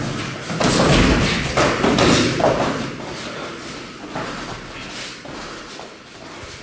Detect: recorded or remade recorded